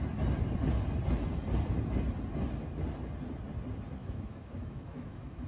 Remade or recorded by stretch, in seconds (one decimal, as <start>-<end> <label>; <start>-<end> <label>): 0.0-4.0 recorded; 4.0-5.5 remade